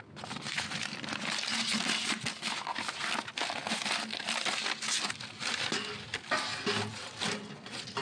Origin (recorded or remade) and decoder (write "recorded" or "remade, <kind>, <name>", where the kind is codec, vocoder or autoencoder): recorded